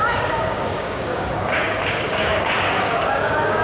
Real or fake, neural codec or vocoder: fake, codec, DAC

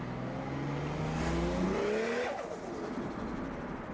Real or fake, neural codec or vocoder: real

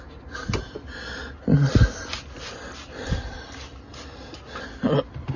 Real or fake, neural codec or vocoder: real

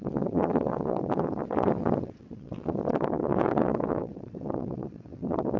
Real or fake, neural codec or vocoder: fake, vocoder, WaveNeXt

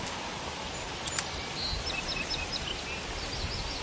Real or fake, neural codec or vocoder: real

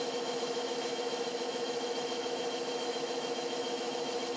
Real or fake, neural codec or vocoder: fake, autoencoder, DAC-VAE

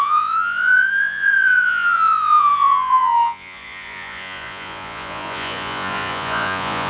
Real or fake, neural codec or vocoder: fake, vocoder, Vocos